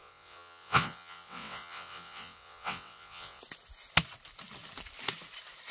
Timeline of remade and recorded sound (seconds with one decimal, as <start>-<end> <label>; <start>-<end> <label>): 0.0-3.4 remade; 3.4-5.7 recorded